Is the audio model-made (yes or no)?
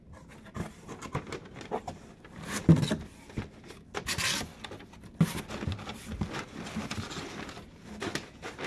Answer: no